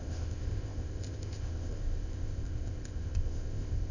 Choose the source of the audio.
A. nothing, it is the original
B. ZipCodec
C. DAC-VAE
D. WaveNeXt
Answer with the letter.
B